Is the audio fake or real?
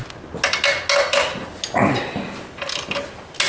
real